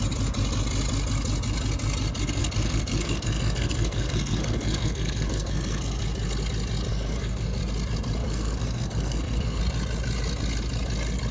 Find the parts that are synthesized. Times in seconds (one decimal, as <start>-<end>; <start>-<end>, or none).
2.4-6.0; 6.9-7.6; 8.2-9.6